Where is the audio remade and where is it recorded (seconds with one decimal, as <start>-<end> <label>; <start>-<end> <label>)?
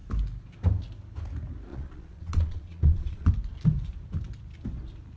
0.0-1.7 recorded; 1.7-3.3 remade; 3.3-5.2 recorded